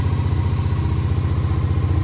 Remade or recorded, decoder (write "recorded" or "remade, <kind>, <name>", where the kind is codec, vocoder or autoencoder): recorded